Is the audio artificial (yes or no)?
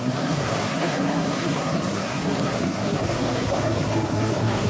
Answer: yes